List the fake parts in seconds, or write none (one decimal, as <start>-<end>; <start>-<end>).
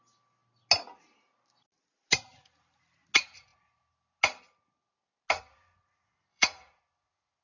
6.3-6.8